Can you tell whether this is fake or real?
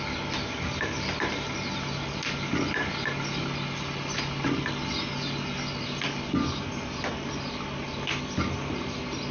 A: real